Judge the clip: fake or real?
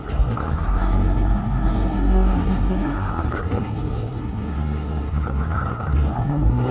fake